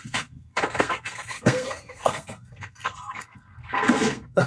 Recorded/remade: remade